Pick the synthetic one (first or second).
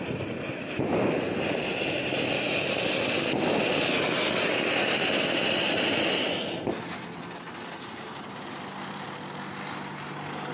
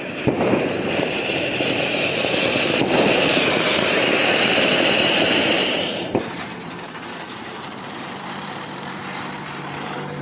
second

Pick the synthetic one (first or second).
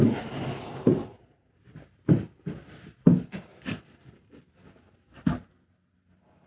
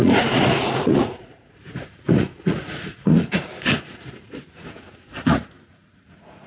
second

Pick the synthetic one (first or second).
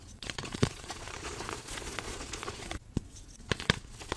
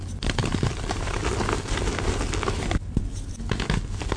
first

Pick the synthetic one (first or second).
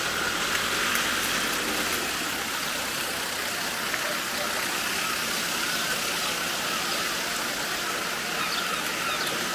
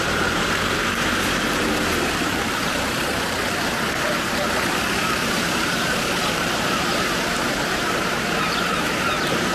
second